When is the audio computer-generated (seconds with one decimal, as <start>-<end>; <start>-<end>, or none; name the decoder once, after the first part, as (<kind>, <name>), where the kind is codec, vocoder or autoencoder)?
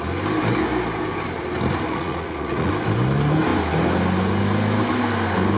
1.9-2.7 (vocoder, Vocos)